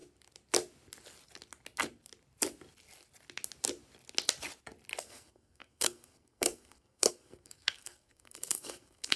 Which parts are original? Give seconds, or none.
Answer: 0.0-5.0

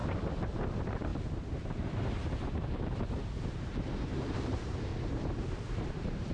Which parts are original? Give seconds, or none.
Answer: 1.1-2.6; 4.9-5.6

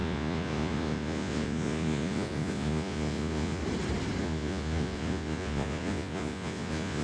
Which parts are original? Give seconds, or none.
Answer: 3.6-4.2

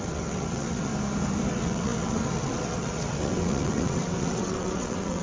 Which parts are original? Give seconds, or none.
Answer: 0.9-1.5

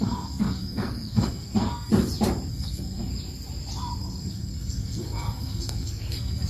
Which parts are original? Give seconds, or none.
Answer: 1.9-2.5; 3.1-4.0

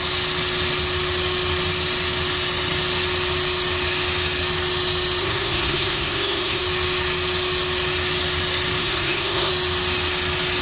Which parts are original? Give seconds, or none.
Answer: 0.0-5.2; 6.6-8.8; 9.5-10.6

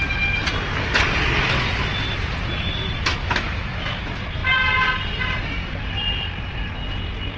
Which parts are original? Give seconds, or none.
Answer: 0.0-3.2; 3.8-7.4